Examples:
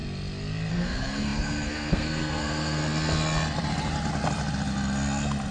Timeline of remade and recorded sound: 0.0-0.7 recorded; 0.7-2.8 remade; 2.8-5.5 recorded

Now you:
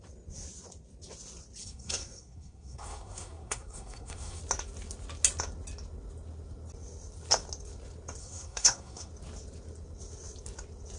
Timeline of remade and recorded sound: 0.0-1.6 recorded; 1.6-4.4 remade; 4.4-8.2 recorded; 8.2-9.1 remade; 9.1-11.0 recorded

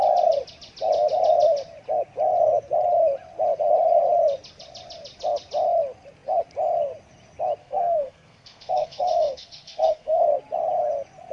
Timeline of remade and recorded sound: 0.0-7.6 recorded; 7.6-10.2 remade; 10.2-11.3 recorded

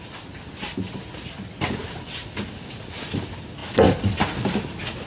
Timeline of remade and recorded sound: 0.0-5.1 recorded

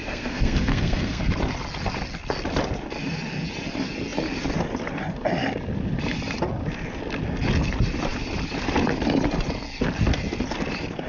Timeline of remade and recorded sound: 0.0-1.3 remade; 1.3-11.1 recorded

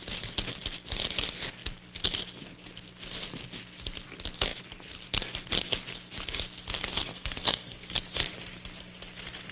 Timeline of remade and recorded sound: 0.0-7.1 recorded; 7.1-7.8 remade; 7.8-9.5 recorded

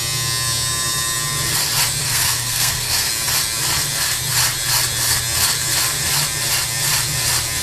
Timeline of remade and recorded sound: 0.0-2.0 recorded; 2.0-3.1 remade; 3.1-7.6 recorded

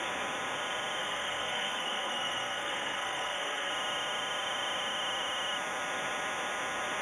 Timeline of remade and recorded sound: 0.0-1.0 recorded; 1.0-3.7 remade; 3.7-7.0 recorded